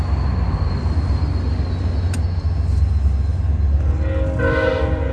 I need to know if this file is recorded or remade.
recorded